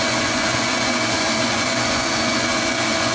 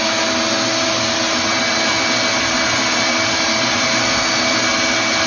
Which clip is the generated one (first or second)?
first